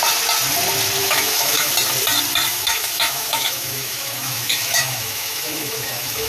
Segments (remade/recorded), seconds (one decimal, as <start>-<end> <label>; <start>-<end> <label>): 0.0-1.0 recorded; 1.0-1.7 remade; 1.7-2.5 recorded; 2.5-6.3 remade